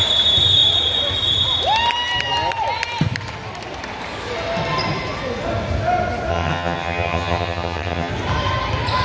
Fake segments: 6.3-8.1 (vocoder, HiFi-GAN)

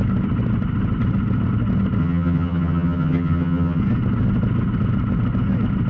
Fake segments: 2.0-3.8 (vocoder, HiFi-GAN)

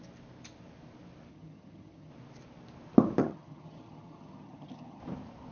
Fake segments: 1.3-2.1 (vocoder, HiFi-GAN); 3.2-5.0

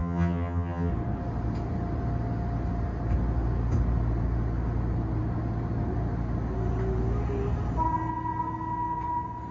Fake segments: 0.0-0.9 (vocoder, HiFi-GAN)

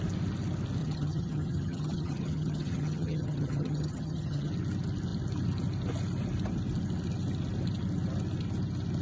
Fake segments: 0.8-4.5 (vocoder, HiFi-GAN)

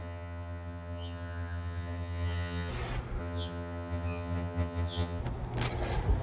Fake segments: 0.0-2.7 (vocoder, HiFi-GAN); 3.2-5.2